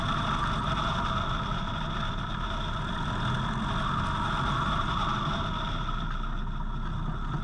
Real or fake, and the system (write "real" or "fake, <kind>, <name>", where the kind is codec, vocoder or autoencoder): real